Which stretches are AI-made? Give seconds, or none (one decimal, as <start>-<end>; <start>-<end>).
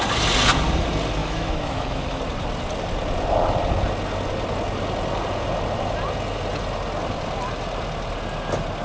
1.2-2.2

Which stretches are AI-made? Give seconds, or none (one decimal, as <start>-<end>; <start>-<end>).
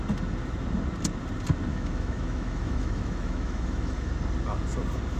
1.7-4.1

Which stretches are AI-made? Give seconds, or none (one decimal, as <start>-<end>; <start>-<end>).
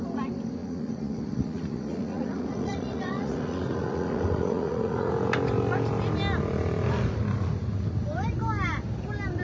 0.6-5.1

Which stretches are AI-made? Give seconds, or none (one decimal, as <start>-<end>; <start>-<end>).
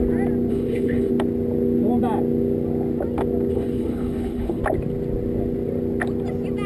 0.5-1.1; 3.5-4.6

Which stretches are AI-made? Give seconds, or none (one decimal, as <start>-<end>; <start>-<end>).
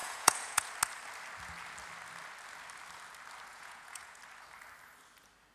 0.0-0.7; 3.5-4.2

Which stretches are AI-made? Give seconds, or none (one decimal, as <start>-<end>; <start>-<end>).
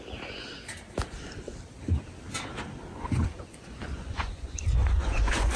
2.9-5.6